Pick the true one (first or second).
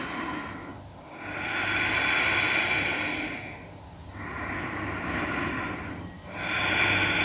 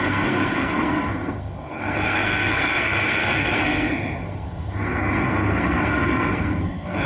first